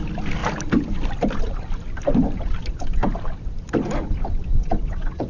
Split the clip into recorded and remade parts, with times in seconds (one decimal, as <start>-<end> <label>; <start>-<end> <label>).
0.0-4.5 recorded; 4.5-5.3 remade